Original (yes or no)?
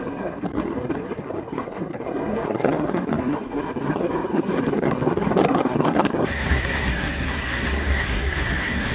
no